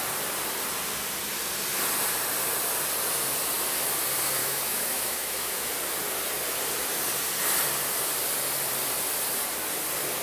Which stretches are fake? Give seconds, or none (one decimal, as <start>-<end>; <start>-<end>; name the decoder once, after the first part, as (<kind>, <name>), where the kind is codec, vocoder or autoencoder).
4.4-5.7 (autoencoder, DAC-VAE)